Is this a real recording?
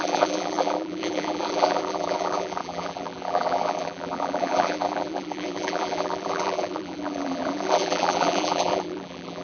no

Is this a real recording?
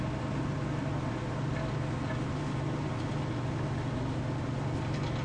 yes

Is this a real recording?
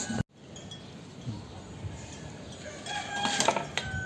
yes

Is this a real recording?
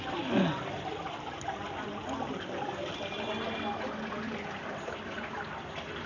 no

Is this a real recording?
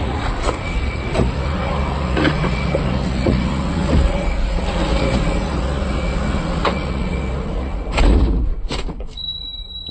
no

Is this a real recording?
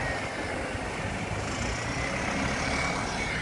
yes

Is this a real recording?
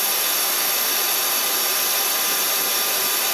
yes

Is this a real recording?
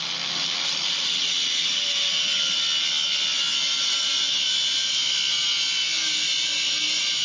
yes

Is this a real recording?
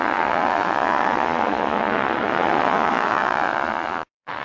no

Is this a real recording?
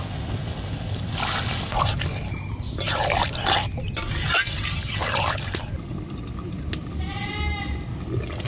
yes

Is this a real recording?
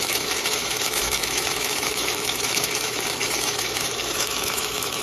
no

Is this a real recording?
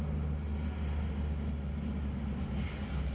yes